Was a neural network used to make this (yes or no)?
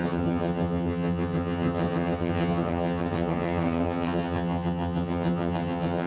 yes